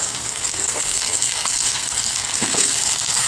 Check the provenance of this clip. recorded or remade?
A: remade